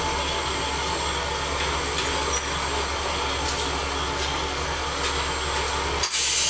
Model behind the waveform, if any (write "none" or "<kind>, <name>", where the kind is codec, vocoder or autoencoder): none